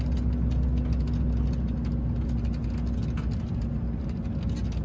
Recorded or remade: recorded